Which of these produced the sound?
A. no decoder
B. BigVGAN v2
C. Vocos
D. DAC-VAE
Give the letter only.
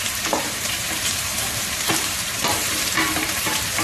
B